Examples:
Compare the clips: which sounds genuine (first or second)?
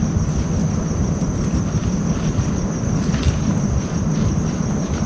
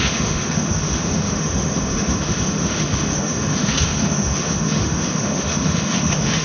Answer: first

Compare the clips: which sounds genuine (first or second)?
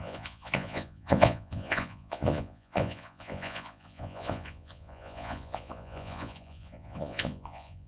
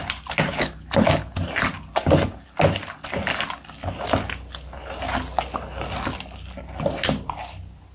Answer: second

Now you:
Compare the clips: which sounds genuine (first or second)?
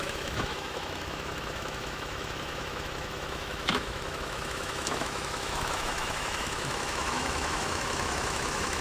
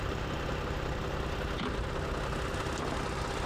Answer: second